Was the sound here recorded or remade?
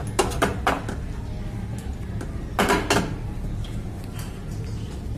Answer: recorded